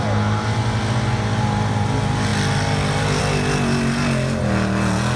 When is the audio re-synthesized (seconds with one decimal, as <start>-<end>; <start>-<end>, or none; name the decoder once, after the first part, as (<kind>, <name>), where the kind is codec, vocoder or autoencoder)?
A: none